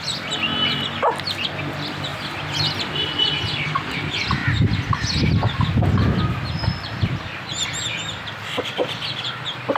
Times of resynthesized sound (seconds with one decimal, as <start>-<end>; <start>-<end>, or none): 0.0-0.5; 1.6-2.1; 3.2-4.4; 6.6-9.8